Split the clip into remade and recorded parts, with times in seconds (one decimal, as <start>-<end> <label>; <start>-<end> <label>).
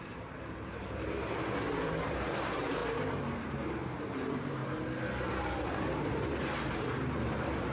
0.0-4.6 remade; 4.6-6.1 recorded; 6.1-7.7 remade